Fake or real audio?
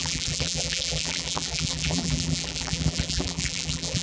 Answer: fake